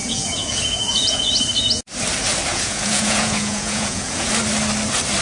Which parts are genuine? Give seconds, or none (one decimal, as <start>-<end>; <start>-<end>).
1.3-2.5; 4.3-5.2